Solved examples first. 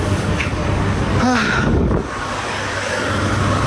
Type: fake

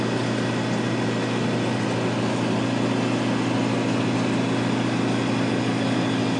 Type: real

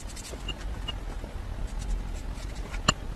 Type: real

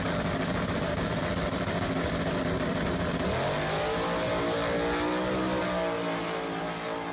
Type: real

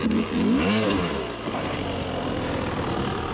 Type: real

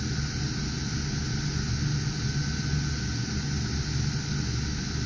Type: real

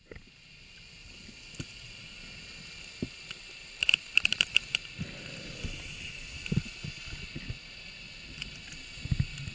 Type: real